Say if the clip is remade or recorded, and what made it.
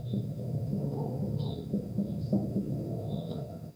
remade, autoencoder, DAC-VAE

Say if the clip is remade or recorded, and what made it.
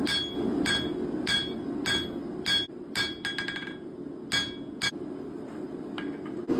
recorded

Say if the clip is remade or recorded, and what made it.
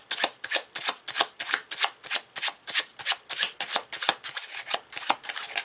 recorded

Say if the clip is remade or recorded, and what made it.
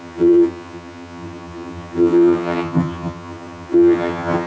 remade, vocoder, HiFi-GAN